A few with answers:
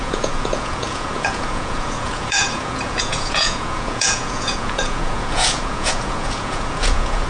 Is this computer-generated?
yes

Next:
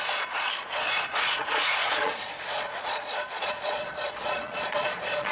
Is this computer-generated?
yes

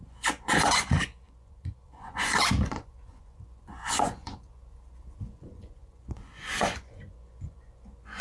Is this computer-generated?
yes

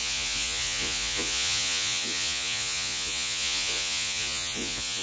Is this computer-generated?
yes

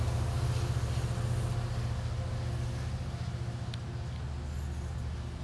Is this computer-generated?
no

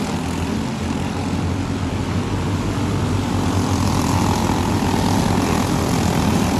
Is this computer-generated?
no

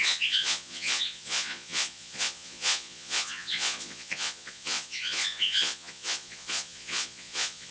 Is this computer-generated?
yes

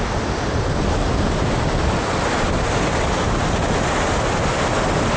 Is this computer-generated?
no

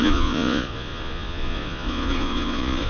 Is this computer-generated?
yes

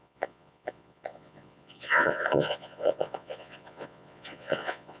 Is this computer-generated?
yes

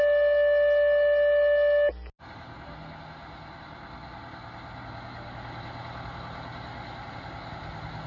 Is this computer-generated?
no